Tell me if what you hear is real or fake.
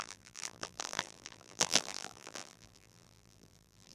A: fake